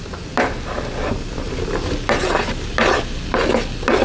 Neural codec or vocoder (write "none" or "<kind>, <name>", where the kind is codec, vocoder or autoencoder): none